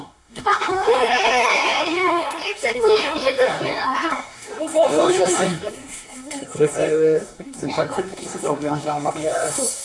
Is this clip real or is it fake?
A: fake